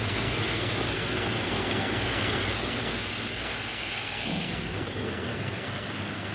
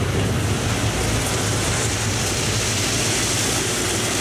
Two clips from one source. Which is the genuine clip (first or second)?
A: second